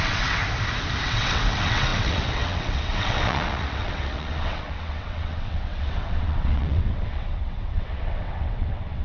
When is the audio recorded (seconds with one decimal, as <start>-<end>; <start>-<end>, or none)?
0.4-1.0